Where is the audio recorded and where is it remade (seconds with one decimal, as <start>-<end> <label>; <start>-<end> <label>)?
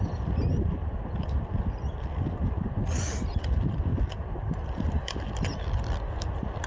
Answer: 0.0-0.8 recorded; 0.8-3.2 remade; 3.2-3.9 recorded; 3.9-6.0 remade; 6.0-6.7 recorded